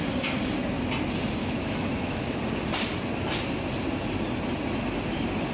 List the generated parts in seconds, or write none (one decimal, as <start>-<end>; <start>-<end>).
1.4-2.4